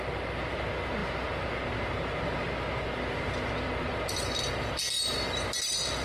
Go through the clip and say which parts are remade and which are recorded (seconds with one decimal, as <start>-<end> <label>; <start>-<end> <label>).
0.0-6.0 recorded